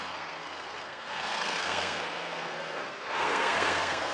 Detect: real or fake fake